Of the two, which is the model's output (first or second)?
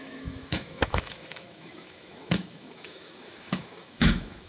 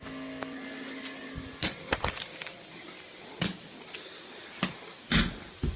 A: first